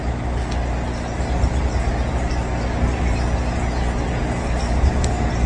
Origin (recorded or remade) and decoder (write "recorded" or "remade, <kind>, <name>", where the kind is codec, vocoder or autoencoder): recorded